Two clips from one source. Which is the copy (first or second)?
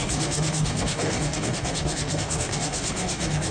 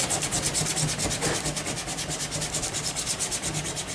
first